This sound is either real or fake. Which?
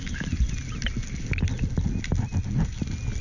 real